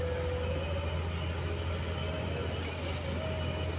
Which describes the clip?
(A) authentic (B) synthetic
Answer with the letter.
A